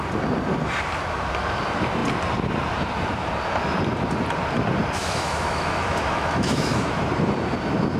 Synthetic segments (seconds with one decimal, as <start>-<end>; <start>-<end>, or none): 5.0-7.0